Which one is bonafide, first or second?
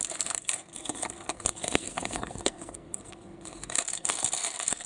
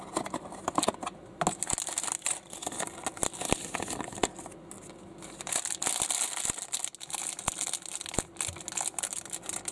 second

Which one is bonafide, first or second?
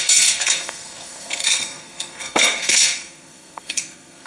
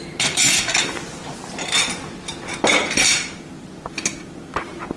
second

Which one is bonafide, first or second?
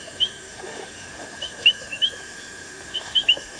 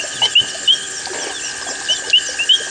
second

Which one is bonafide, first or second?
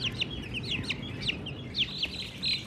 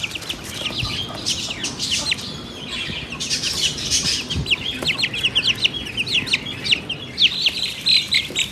first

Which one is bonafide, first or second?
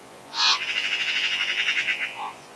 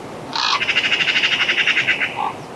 second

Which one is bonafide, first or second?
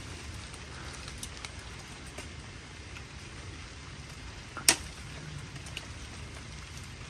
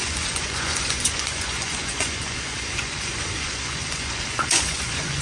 first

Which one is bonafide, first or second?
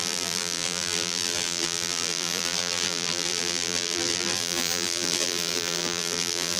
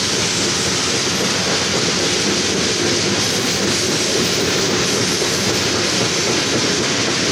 second